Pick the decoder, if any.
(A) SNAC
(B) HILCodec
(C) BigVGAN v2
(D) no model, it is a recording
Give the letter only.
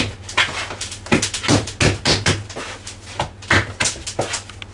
D